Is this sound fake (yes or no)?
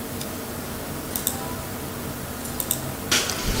no